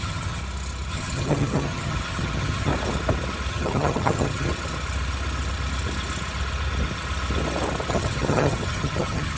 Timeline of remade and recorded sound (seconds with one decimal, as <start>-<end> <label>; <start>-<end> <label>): 0.0-0.4 remade; 0.4-0.9 recorded; 0.9-2.7 remade; 2.7-3.5 recorded; 3.5-4.5 remade; 4.5-7.9 recorded; 7.9-9.4 remade